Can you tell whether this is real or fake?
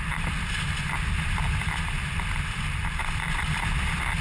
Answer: real